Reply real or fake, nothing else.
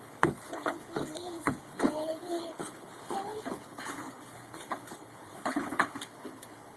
fake